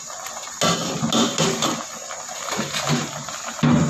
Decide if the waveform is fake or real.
real